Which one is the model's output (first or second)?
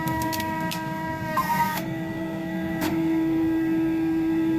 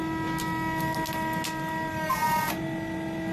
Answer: first